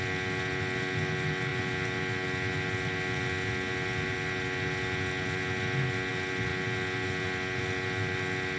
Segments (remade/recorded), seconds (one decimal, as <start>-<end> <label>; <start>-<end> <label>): 0.0-8.6 recorded